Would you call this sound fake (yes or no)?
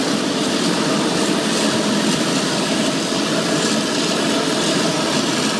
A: no